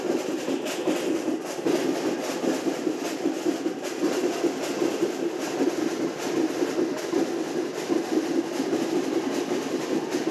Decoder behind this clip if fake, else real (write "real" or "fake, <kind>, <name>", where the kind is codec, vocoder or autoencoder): real